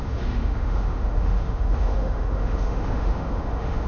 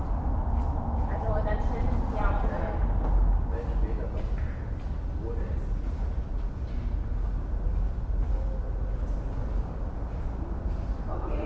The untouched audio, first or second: second